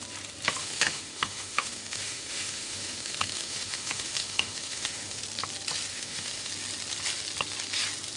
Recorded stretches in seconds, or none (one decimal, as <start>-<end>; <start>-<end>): 0.0-0.6; 5.2-5.9; 6.5-8.2